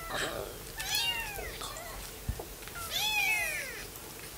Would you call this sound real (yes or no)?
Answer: yes